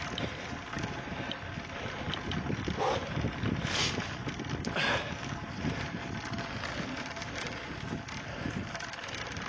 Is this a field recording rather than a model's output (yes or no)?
yes